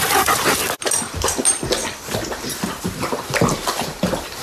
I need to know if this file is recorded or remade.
remade